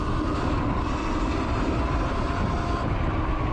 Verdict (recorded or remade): recorded